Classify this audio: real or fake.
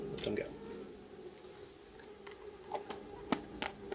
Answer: real